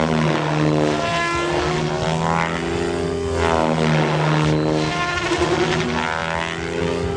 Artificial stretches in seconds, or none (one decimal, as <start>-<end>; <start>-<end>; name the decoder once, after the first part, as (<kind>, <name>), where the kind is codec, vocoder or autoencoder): none